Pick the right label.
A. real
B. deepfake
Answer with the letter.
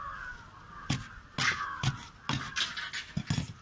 A